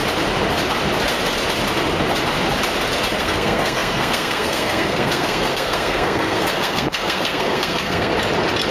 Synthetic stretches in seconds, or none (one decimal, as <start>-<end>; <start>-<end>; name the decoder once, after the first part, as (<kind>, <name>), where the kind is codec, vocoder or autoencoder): 3.2-8.1 (codec, SNAC)